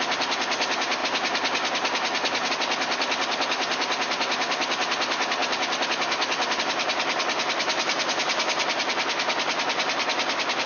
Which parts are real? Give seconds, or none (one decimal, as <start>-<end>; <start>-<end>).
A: 0.0-10.7